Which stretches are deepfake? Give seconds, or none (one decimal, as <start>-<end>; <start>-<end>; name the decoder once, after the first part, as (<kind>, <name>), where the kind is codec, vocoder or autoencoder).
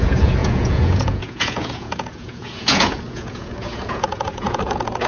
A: 0.0-5.1 (vocoder, Vocos)